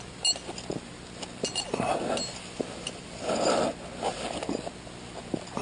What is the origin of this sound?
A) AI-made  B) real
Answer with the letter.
B